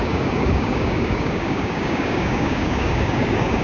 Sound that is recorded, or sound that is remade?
remade